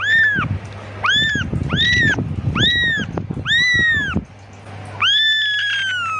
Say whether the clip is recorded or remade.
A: recorded